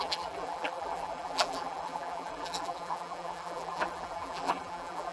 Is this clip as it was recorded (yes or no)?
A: no